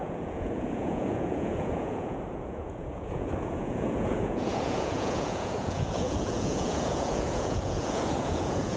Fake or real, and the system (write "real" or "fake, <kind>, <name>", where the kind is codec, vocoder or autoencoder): fake, vocoder, Vocos